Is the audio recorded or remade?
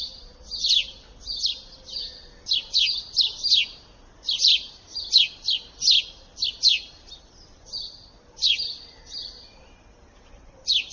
recorded